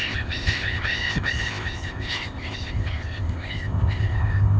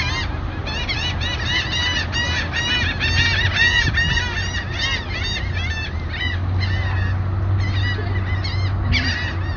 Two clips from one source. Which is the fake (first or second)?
first